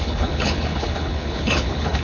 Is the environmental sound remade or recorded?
remade